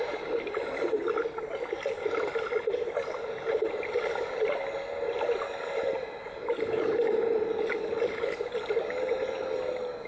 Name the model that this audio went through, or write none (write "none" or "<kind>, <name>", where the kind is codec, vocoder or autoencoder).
none